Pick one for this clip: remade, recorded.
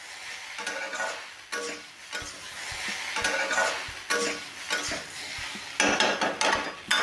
recorded